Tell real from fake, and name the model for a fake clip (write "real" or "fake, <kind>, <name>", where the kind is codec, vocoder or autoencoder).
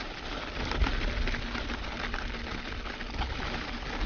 real